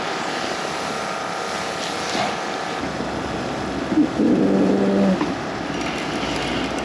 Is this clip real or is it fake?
real